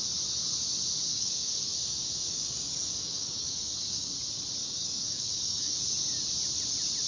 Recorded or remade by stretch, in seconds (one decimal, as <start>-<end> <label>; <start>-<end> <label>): 0.0-1.1 recorded; 1.1-4.1 remade; 4.1-4.6 recorded; 4.6-5.8 remade; 5.8-7.1 recorded